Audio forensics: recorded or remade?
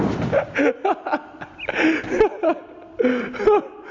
recorded